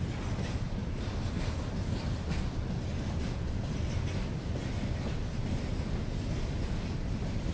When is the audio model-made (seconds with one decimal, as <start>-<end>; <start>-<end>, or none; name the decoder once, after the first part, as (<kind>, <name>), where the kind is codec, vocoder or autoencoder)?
none

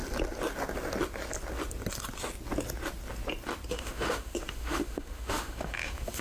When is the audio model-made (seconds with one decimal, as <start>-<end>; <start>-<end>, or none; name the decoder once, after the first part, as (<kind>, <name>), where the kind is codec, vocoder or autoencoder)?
3.7-6.2 (autoencoder, DAC-VAE)

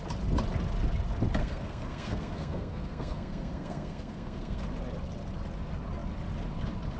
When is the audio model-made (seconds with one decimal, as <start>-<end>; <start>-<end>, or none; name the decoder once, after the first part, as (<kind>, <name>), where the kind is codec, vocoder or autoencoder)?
1.4-4.6 (codec, SNAC)

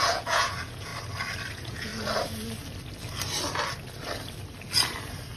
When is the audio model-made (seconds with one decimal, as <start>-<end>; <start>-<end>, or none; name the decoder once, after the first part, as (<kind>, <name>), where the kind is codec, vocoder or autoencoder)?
0.0-0.9 (vocoder, Vocos); 1.5-1.9

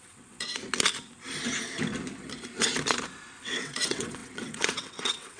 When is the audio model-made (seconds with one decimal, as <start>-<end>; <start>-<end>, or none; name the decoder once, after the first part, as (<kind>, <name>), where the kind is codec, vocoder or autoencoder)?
0.0-0.5 (vocoder, WaveNeXt); 3.4-5.4